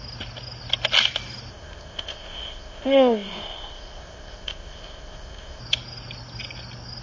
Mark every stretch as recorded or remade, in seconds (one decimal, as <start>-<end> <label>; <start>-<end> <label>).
0.0-1.5 recorded; 1.5-5.6 remade; 5.6-7.0 recorded